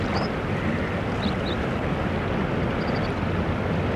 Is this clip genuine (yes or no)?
yes